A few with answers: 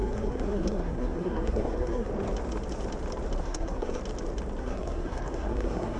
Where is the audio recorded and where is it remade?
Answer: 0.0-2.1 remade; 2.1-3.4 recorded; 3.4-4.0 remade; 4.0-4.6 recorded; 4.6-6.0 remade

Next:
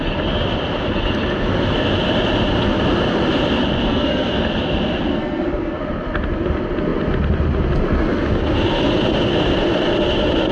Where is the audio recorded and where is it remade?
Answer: 0.0-3.9 recorded; 3.9-4.4 remade; 4.4-5.1 recorded; 5.1-5.8 remade; 5.8-10.5 recorded